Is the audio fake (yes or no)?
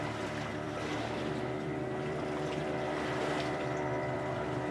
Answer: yes